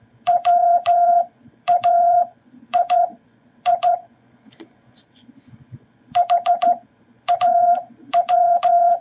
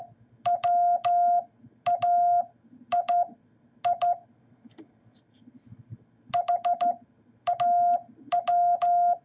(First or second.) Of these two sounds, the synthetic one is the first